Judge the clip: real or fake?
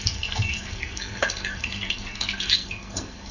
fake